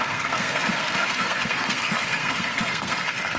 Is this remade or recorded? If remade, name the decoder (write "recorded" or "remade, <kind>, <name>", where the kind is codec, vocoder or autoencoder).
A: remade, codec, SNAC